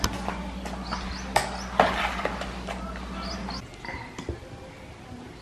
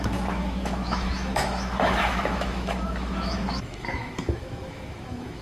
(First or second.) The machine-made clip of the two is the second